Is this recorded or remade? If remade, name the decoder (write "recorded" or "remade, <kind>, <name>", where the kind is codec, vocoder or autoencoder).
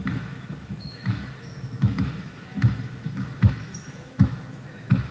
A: remade, autoencoder, DAC-VAE